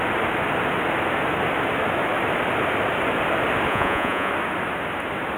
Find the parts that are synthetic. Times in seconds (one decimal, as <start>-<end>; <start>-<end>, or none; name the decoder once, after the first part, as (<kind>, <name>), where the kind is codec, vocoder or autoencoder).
3.7-4.3 (vocoder, Vocos)

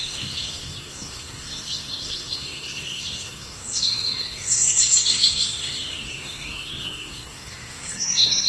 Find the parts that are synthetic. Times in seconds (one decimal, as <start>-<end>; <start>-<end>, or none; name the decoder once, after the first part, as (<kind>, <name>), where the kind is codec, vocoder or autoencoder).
0.0-8.5 (codec, SNAC)